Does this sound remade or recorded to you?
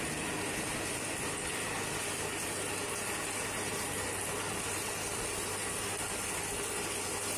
recorded